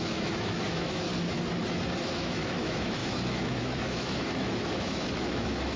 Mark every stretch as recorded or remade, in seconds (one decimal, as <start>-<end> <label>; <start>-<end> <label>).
0.0-1.1 remade; 1.1-2.0 recorded; 2.0-5.8 remade

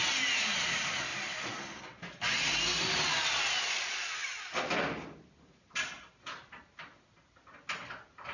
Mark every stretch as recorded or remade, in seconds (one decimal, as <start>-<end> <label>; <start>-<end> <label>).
0.0-8.3 recorded